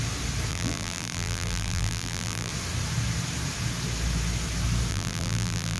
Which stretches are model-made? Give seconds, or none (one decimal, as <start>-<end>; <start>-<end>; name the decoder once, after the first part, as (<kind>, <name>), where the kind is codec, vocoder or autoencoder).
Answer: 0.5-2.5 (vocoder, BigVGAN v2); 4.9-5.8